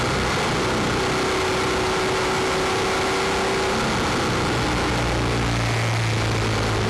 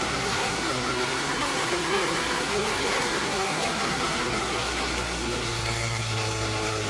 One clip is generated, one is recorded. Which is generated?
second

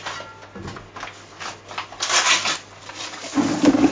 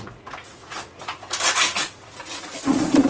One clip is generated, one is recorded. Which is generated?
second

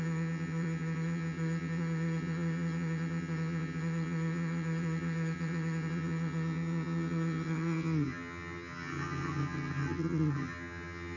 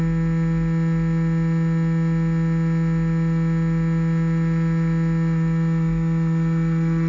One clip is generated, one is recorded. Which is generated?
first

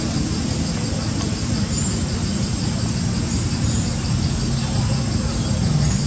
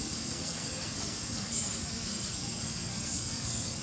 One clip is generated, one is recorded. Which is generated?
second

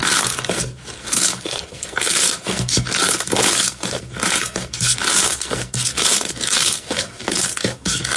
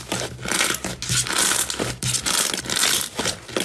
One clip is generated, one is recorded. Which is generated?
first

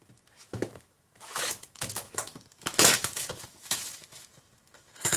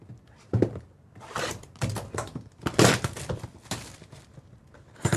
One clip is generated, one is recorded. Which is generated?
first